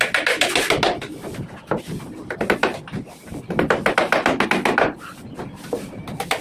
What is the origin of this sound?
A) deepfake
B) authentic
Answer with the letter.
B